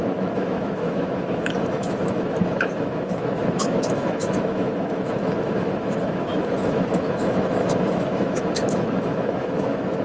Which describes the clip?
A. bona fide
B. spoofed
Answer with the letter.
B